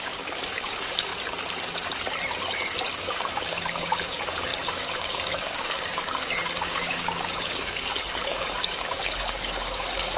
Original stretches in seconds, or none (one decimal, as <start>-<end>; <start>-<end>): 1.1-3.0

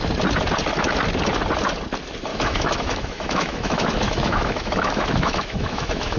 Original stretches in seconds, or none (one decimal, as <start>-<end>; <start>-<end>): 0.0-2.3